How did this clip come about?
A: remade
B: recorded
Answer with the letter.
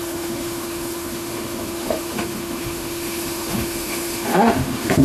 A